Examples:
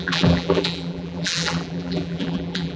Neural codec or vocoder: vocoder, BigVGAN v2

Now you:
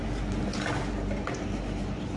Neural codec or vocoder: none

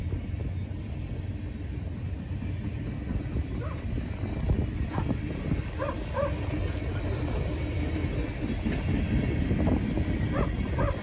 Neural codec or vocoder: none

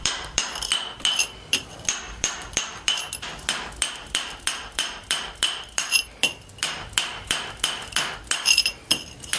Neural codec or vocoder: vocoder, BigVGAN v2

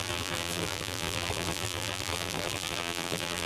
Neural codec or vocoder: vocoder, BigVGAN v2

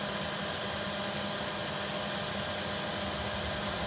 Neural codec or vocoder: none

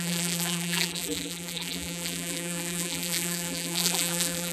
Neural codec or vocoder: vocoder, BigVGAN v2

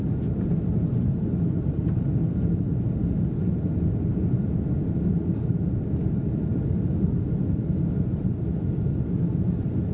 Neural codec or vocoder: none